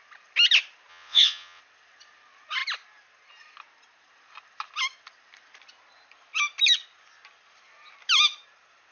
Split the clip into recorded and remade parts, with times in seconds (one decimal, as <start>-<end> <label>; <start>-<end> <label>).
0.0-0.9 recorded; 0.9-1.6 remade; 1.6-8.9 recorded